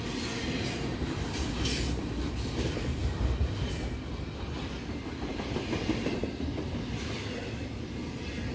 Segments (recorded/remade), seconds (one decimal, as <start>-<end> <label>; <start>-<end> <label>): 0.0-8.5 recorded